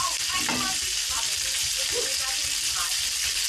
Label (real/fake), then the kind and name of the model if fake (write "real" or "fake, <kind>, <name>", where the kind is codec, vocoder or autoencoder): real